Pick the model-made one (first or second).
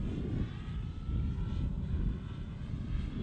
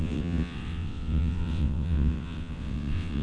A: second